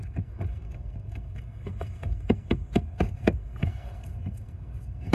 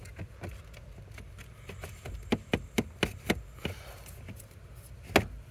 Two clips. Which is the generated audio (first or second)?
first